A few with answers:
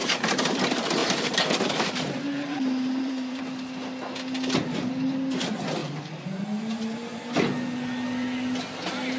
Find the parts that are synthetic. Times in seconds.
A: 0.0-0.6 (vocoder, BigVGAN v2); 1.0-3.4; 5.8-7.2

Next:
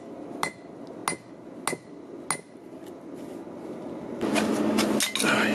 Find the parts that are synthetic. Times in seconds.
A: none